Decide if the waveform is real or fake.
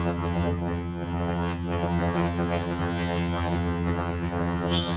fake